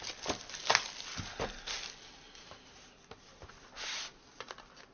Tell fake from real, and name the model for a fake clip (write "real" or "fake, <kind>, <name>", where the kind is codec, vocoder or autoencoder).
real